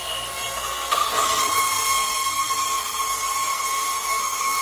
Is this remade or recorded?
remade